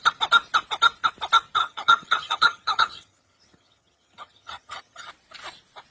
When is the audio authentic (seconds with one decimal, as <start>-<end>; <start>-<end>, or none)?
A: 0.0-1.6; 5.1-5.9